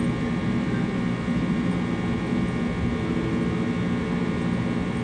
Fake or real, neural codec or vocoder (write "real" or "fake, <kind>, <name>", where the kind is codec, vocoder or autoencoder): real